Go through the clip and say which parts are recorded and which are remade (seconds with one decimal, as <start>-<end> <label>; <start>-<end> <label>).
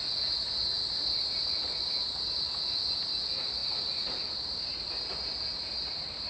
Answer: 0.0-6.3 recorded